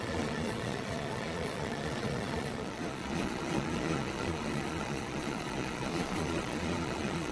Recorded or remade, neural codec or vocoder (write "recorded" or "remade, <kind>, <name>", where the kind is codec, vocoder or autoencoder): remade, vocoder, Vocos